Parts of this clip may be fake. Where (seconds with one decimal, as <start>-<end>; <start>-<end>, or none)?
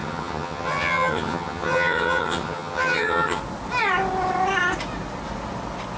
0.0-3.4